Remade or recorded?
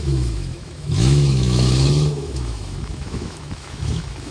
remade